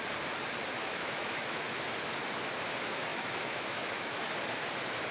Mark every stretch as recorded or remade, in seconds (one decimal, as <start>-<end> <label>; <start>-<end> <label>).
0.0-0.8 recorded; 0.8-1.6 remade; 1.6-3.1 recorded; 3.1-4.3 remade; 4.3-5.1 recorded